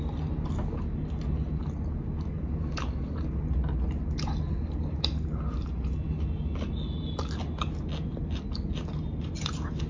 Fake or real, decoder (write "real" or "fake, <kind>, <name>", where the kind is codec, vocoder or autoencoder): real